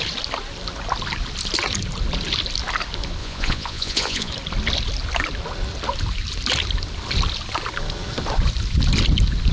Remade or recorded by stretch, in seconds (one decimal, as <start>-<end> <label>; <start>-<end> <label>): 0.0-3.2 recorded; 3.2-4.3 remade; 4.3-9.5 recorded